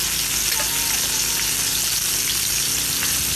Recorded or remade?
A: recorded